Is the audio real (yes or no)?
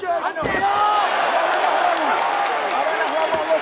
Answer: yes